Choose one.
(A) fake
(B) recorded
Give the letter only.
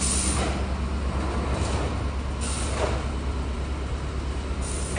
B